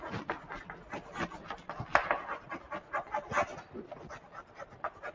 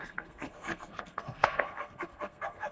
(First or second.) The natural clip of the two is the first